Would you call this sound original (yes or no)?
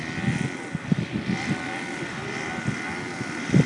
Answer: yes